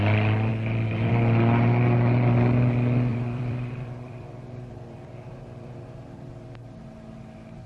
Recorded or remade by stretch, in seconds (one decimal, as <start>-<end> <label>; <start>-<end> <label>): 0.0-0.5 recorded; 0.5-1.1 remade; 1.1-3.1 recorded; 3.1-6.3 remade; 6.3-7.7 recorded